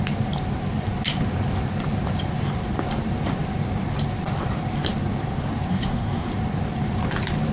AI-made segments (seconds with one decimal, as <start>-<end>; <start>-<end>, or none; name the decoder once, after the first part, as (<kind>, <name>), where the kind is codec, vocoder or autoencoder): 5.7-6.3 (codec, SNAC)

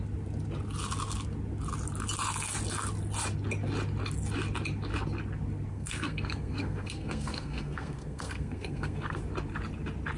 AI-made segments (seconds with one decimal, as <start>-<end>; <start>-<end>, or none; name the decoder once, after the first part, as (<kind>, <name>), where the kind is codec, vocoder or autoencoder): 5.7-9.2 (codec, SNAC)

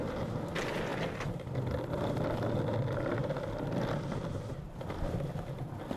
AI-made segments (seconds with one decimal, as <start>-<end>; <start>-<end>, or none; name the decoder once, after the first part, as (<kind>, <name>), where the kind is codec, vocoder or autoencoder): none